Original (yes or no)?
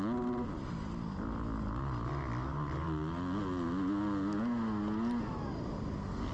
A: yes